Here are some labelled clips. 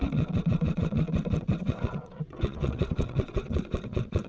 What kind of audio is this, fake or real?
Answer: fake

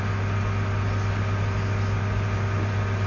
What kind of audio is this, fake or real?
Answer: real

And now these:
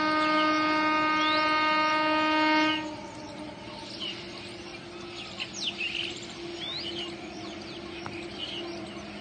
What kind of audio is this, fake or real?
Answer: real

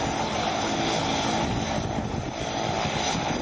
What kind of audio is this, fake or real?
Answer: real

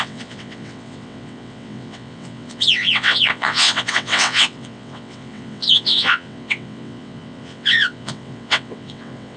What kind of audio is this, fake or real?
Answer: fake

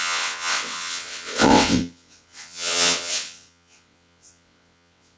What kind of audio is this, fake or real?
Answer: fake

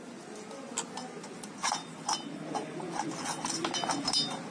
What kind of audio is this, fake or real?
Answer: real